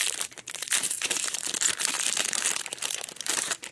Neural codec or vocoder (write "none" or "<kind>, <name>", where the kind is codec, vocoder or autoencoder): vocoder, BigVGAN v2